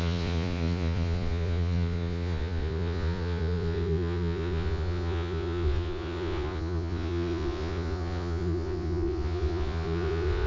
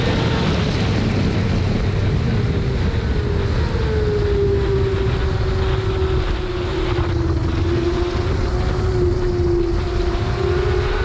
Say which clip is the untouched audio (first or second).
second